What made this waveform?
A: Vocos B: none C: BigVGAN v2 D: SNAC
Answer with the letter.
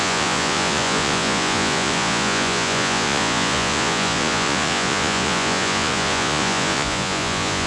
A